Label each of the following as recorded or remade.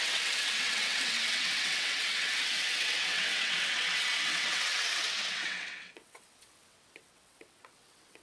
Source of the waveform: remade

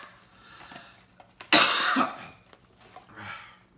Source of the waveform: recorded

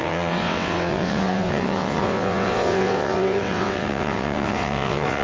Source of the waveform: remade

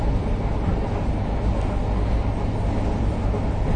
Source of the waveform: recorded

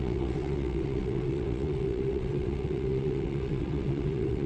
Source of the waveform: remade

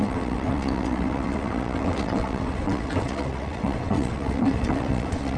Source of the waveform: remade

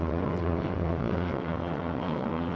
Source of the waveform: remade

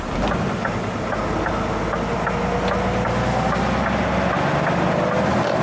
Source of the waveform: recorded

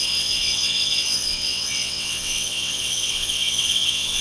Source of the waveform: remade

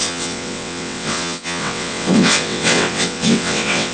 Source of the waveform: remade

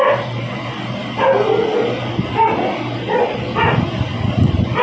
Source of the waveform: recorded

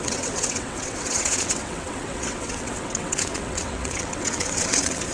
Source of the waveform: remade